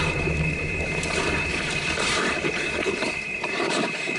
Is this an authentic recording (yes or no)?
no